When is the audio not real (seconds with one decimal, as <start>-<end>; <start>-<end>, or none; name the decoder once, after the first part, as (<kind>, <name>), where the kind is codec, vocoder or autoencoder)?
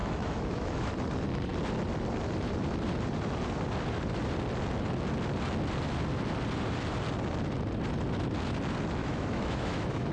0.0-0.9 (autoencoder, DAC-VAE); 9.0-10.1